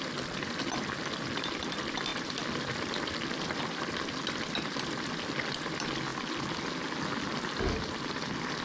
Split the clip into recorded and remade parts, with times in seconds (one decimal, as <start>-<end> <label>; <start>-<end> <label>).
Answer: 0.0-8.6 recorded